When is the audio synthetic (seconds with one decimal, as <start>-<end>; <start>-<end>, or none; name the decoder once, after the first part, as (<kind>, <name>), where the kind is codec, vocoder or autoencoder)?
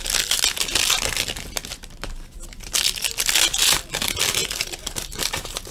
4.4-5.7 (vocoder, BigVGAN v2)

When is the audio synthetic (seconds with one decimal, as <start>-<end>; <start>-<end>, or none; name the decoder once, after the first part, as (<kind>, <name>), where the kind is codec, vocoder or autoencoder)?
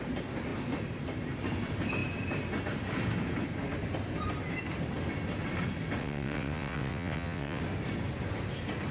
6.0-7.6 (vocoder, WaveNeXt)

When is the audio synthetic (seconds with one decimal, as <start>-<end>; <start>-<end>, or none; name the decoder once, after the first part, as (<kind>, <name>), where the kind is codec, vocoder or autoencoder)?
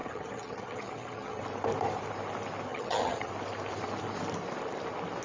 0.0-1.4 (vocoder, HiFi-GAN); 2.7-3.3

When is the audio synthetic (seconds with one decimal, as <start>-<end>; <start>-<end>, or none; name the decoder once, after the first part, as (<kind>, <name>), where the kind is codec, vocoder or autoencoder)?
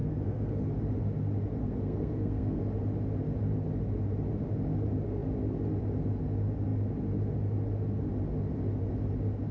0.0-0.6 (codec, SNAC); 1.6-2.6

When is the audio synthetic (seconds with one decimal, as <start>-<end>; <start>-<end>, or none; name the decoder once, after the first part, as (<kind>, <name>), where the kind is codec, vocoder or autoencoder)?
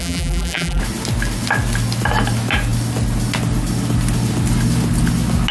0.0-0.8 (vocoder, BigVGAN v2)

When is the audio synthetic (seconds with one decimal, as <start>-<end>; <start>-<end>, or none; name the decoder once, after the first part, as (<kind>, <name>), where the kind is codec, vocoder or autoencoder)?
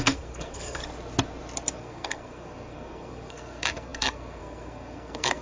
0.0-0.8 (codec, SNAC); 1.8-5.4